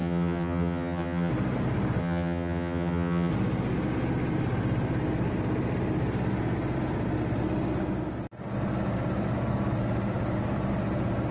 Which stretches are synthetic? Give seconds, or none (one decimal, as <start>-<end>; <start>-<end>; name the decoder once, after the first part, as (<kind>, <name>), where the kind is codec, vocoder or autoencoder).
0.0-1.3 (vocoder, HiFi-GAN); 2.0-3.3